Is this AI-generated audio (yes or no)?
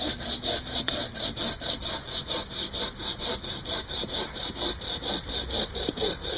no